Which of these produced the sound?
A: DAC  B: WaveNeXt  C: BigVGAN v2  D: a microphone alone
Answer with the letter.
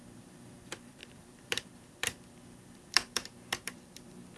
C